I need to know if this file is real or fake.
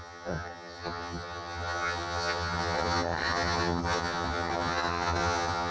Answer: fake